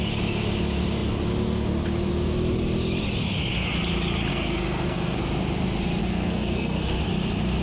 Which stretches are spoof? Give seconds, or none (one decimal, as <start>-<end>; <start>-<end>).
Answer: 4.3-5.2; 6.0-7.0